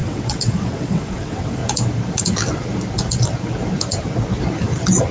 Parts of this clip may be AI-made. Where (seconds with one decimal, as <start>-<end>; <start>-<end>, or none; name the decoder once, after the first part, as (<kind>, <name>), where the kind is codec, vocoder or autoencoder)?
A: 0.0-1.6 (vocoder, WaveNeXt)